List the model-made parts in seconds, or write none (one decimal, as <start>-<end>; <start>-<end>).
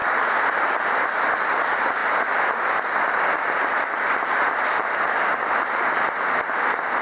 none